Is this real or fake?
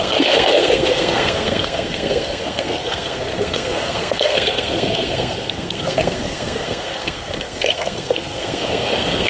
fake